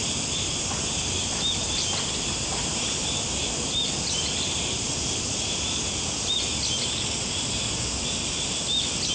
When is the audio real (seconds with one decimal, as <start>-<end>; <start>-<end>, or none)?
0.0-1.6; 6.3-9.1